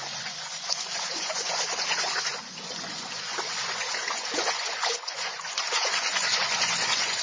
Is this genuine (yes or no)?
no